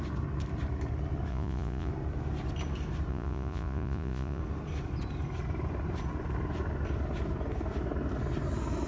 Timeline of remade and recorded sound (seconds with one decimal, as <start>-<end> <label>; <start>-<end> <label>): 0.0-1.3 recorded; 1.3-1.9 remade; 1.9-3.1 recorded; 3.1-4.4 remade; 4.4-8.9 recorded